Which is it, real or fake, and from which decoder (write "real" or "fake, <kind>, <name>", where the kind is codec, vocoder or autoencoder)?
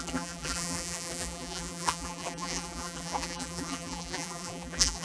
fake, vocoder, BigVGAN v2